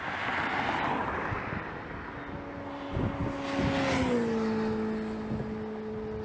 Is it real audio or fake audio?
real